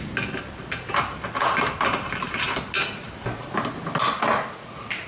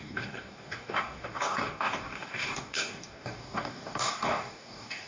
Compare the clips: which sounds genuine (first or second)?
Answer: first